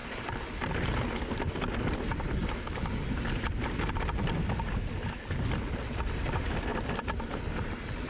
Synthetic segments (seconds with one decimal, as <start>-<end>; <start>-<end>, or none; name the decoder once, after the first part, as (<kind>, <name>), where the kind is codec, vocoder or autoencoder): 6.7-7.4 (vocoder, BigVGAN v2)